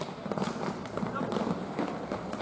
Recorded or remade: recorded